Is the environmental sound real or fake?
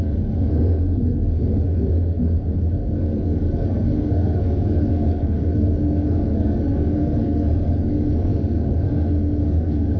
fake